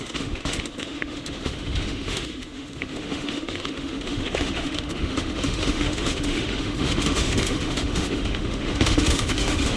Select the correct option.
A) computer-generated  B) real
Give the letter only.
A